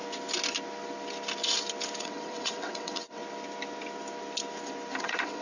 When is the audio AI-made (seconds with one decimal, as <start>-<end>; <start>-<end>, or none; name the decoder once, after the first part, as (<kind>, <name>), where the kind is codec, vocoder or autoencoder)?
2.0-3.2 (vocoder, WaveNeXt); 5.0-5.4